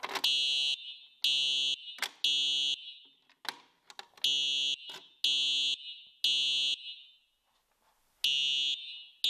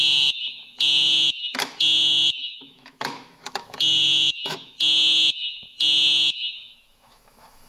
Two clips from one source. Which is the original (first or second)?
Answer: first